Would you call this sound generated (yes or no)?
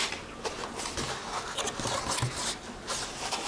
no